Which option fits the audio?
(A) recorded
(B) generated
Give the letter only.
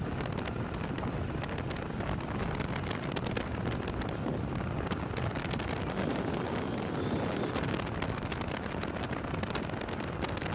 A